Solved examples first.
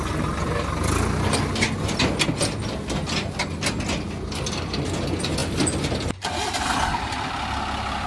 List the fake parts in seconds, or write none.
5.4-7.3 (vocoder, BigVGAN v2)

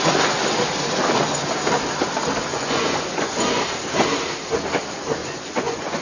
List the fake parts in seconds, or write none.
2.5-3.6 (vocoder, Vocos); 5.2-6.0

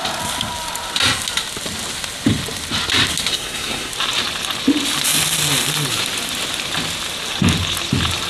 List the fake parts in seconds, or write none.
3.3-3.9 (codec, SNAC)